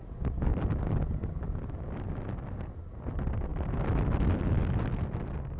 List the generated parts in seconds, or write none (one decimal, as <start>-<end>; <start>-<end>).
0.5-2.9